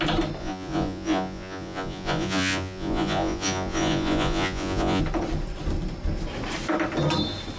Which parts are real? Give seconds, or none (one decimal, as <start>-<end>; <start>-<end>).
0.0-0.4; 5.0-7.6